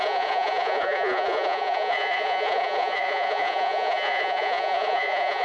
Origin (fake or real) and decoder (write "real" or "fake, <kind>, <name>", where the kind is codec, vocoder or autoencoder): fake, vocoder, Vocos